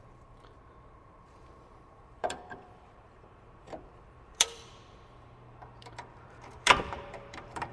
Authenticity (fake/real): fake